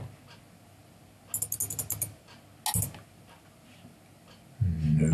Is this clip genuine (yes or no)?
yes